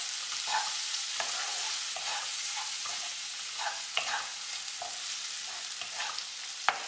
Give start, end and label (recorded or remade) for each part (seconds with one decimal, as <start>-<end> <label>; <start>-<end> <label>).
0.0-0.5 recorded; 0.5-4.5 remade; 4.5-6.9 recorded